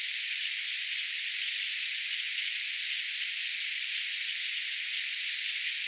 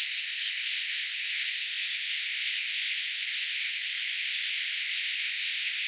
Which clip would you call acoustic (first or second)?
first